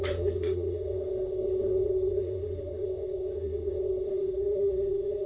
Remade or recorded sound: remade